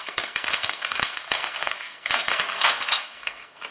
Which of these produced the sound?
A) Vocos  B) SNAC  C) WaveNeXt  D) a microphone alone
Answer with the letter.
B